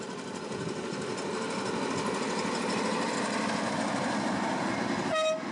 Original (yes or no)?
yes